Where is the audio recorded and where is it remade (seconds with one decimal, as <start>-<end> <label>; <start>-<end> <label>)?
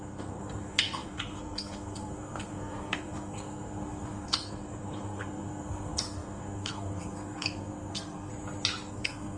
0.0-8.3 remade; 8.3-8.9 recorded; 8.9-9.4 remade